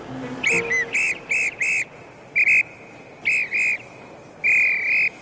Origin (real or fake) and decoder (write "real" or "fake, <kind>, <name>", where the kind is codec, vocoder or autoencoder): real